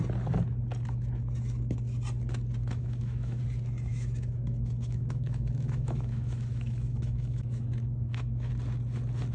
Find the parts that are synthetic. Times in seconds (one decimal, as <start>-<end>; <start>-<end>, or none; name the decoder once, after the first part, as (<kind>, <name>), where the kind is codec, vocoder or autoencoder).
2.6-3.4 (autoencoder, DAC-VAE); 3.9-8.5

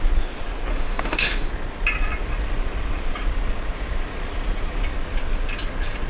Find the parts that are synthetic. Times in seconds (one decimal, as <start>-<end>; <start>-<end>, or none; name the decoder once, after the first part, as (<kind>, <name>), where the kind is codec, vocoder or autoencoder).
0.7-1.5 (autoencoder, DAC-VAE)

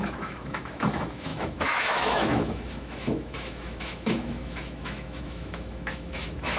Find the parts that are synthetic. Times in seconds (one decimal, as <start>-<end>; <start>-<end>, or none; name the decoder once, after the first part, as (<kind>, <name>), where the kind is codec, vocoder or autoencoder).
0.0-6.6 (autoencoder, DAC-VAE)

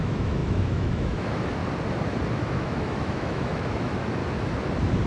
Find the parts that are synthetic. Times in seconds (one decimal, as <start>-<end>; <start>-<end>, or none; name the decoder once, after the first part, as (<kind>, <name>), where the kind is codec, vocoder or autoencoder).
0.0-1.6 (autoencoder, DAC-VAE); 2.3-4.2

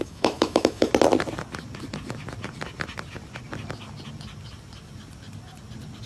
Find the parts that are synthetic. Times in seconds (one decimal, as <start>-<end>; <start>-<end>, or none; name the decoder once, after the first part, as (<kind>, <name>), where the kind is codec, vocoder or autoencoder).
0.0-0.9 (autoencoder, DAC-VAE)